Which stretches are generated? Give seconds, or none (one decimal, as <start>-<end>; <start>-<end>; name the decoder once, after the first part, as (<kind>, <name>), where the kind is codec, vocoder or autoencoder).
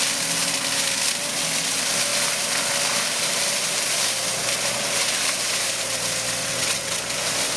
6.4-7.0 (vocoder, WaveNeXt)